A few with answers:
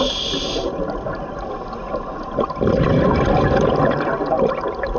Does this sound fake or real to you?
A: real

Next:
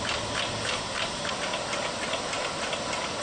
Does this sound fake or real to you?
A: real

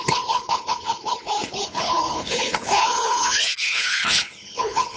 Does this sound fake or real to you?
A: fake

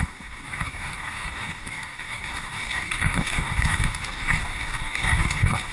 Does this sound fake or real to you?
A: fake